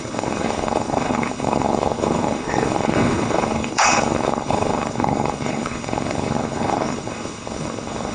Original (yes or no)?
no